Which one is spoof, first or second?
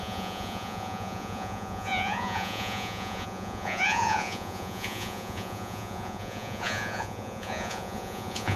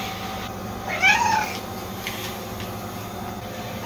first